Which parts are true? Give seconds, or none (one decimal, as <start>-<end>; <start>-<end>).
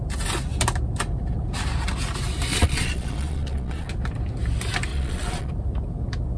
0.0-2.5; 3.9-4.9; 5.5-6.4